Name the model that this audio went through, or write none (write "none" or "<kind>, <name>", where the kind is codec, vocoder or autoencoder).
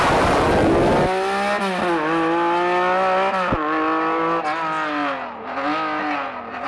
none